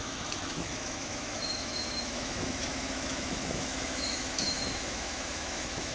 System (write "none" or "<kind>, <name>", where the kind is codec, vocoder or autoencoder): autoencoder, DAC-VAE